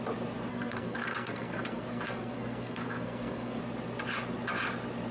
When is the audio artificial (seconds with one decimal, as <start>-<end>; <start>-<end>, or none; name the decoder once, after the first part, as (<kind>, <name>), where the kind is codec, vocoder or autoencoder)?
0.5-3.6 (codec, SNAC)